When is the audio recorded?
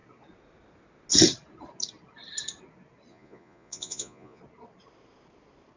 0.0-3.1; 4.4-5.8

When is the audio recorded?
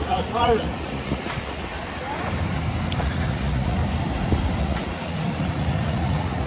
1.6-3.0; 3.8-4.6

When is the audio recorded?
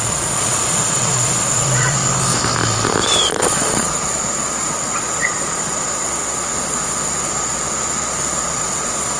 2.0-3.3